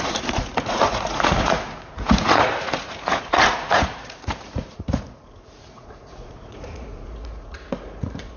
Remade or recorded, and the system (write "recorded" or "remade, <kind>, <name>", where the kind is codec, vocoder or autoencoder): remade, vocoder, Vocos